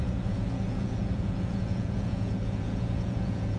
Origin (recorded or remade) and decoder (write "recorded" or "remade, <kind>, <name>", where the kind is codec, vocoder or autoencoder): remade, vocoder, Vocos